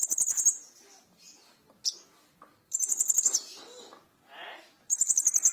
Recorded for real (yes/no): yes